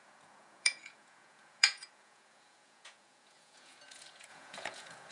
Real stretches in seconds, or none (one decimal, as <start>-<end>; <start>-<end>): none